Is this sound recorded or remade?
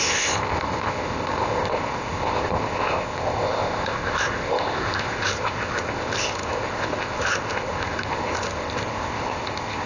remade